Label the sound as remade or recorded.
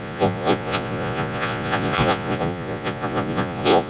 remade